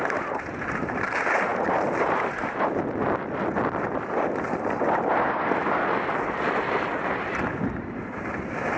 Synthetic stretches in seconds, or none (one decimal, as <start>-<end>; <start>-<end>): none

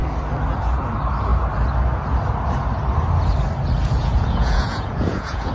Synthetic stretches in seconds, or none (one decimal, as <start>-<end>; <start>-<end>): 3.8-5.5

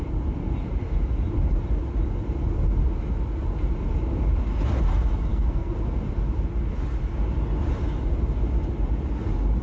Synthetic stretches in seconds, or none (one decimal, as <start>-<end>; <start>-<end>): 5.3-5.8

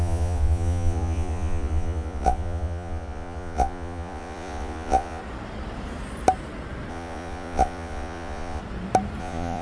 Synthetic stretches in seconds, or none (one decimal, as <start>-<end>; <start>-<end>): 0.0-5.2; 6.9-8.6; 9.2-9.6

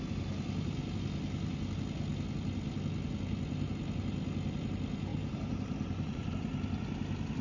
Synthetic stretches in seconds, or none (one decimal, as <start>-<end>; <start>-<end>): 5.1-6.3